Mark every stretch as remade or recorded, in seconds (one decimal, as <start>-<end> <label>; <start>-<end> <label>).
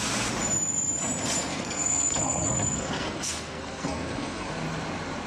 0.0-1.5 recorded; 1.5-4.5 remade; 4.5-5.3 recorded